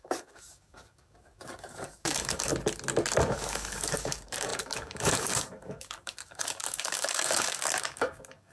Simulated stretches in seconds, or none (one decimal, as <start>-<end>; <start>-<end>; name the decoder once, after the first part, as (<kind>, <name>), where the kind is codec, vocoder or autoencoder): 0.0-2.5 (codec, DAC); 3.2-8.5

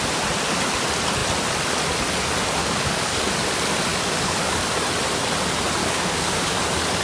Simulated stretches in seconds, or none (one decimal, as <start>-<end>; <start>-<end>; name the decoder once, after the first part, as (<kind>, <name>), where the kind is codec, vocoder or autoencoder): 2.6-3.3 (codec, DAC); 3.9-4.6; 5.8-6.6

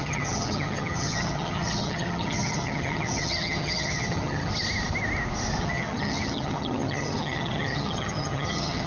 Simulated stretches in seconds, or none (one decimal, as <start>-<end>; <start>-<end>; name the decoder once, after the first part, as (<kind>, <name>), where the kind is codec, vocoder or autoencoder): 0.0-4.5 (vocoder, HiFi-GAN); 5.6-8.9

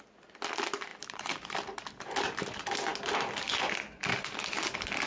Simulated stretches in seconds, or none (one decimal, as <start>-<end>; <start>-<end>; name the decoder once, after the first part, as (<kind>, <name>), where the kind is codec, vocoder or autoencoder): 0.9-1.8 (vocoder, BigVGAN v2)